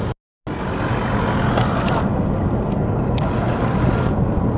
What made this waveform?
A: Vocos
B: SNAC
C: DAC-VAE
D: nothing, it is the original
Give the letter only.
D